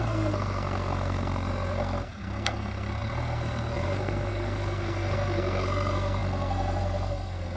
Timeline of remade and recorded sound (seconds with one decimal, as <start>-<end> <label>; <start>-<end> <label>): 0.0-7.6 remade